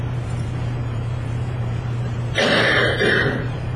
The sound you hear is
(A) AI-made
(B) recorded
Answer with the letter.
A